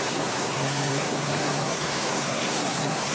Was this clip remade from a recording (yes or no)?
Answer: yes